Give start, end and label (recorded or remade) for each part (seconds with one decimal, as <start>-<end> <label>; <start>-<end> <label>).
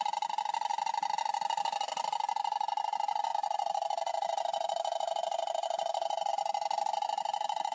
0.0-3.3 recorded; 3.3-6.3 remade; 6.3-7.7 recorded